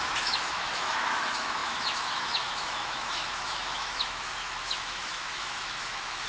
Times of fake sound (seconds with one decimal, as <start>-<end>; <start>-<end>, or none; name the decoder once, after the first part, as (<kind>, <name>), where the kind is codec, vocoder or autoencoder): 0.0-6.3 (autoencoder, DAC-VAE)